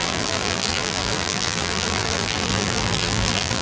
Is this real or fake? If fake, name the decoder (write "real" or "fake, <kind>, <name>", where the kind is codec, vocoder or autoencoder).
fake, vocoder, BigVGAN v2